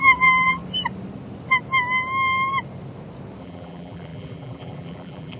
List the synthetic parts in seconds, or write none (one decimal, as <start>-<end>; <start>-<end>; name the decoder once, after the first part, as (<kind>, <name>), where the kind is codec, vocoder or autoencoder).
0.0-0.6 (vocoder, BigVGAN v2); 3.4-5.4